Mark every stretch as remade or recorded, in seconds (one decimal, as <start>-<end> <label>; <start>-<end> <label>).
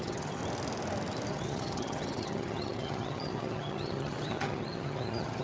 0.0-0.4 remade; 0.4-1.3 recorded; 1.3-5.4 remade